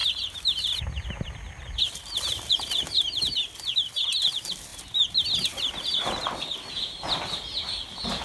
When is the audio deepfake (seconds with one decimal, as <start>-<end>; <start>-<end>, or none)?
none